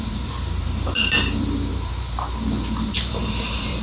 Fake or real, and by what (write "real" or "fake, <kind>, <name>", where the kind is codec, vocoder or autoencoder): fake, vocoder, BigVGAN v2